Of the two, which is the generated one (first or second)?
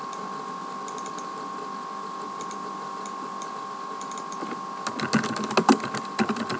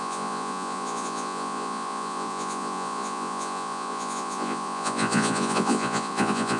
second